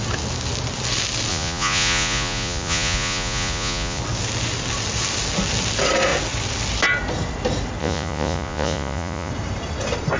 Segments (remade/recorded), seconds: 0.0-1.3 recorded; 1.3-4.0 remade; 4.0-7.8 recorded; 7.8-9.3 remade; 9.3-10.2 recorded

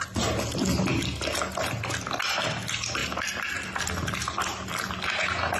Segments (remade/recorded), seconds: 0.0-5.6 recorded

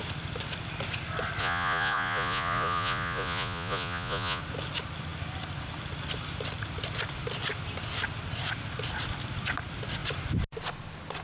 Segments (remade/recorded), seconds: 0.0-1.4 recorded; 1.4-4.4 remade; 4.4-11.2 recorded

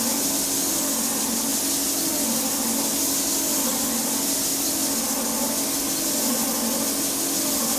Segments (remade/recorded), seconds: 0.0-7.8 recorded

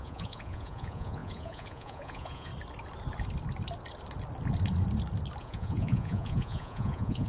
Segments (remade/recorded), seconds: 0.0-2.5 remade; 2.5-5.4 recorded; 5.4-7.3 remade

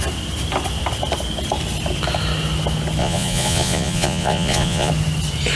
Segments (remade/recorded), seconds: 0.0-3.0 recorded; 3.0-4.9 remade; 4.9-5.6 recorded

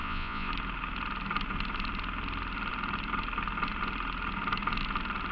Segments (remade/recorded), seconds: 0.0-0.5 remade; 0.5-5.3 recorded